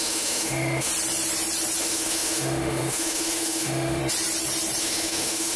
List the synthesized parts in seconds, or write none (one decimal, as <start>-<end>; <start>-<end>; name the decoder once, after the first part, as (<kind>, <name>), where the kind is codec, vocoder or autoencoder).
0.0-0.9 (autoencoder, DAC-VAE); 1.8-4.0; 4.8-5.6